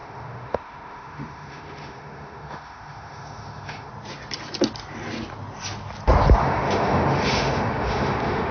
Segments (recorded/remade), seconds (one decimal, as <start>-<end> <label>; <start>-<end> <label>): 0.0-3.9 remade; 3.9-6.4 recorded; 6.4-8.5 remade

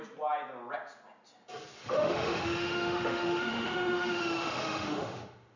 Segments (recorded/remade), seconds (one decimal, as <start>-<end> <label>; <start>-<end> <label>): 0.0-1.8 recorded; 1.8-5.6 remade

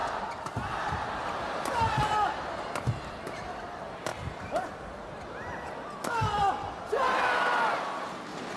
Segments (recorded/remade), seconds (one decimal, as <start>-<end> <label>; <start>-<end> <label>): 0.0-8.6 recorded

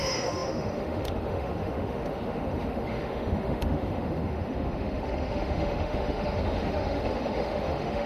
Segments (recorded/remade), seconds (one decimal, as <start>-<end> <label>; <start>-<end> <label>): 0.0-8.1 remade

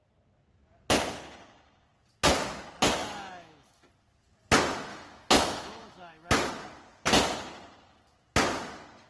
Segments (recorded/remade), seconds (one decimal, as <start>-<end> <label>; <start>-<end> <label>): 0.0-3.0 recorded; 3.0-3.9 remade; 3.9-4.9 recorded; 4.9-6.5 remade; 6.5-9.1 recorded

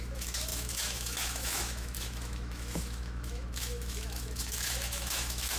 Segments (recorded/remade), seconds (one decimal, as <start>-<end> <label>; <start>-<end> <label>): 0.0-5.6 remade

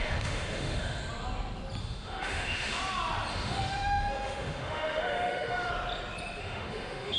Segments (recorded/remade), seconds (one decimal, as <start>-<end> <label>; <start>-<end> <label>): 0.0-1.0 remade; 1.0-1.8 recorded; 1.8-2.8 remade; 2.8-3.3 recorded; 3.3-5.7 remade; 5.7-6.4 recorded; 6.4-7.2 remade